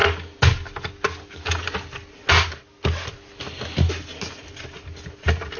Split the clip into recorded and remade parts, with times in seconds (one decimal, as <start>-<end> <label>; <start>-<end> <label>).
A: 0.0-5.6 recorded